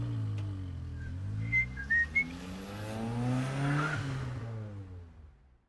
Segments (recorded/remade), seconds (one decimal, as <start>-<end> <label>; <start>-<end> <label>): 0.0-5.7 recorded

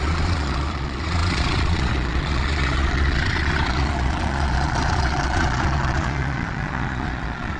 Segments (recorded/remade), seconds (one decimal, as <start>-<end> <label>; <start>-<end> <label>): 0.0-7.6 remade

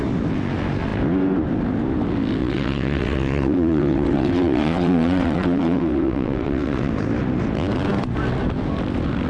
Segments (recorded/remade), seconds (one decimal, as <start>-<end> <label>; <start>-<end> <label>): 0.0-2.4 recorded; 2.4-6.9 remade; 6.9-9.3 recorded

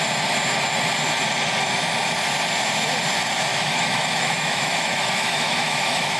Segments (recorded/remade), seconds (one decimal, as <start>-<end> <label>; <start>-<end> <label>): 0.0-3.5 recorded; 3.5-6.2 remade

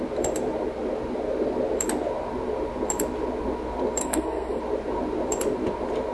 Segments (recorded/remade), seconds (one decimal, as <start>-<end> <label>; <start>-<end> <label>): 0.0-4.0 recorded; 4.0-4.6 remade; 4.6-6.1 recorded

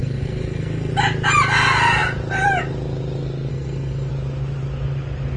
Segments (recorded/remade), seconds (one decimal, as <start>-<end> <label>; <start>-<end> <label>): 0.0-0.9 remade; 0.9-3.5 recorded; 3.5-4.1 remade; 4.1-5.4 recorded

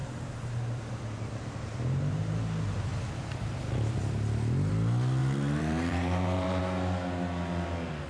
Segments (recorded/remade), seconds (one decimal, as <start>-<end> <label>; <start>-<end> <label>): 0.0-0.8 remade; 0.8-5.2 recorded; 5.2-6.6 remade; 6.6-8.1 recorded

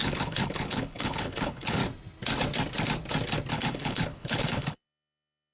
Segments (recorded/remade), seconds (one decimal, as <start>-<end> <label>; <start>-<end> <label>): 0.0-1.8 remade; 1.8-3.5 recorded; 3.5-5.5 remade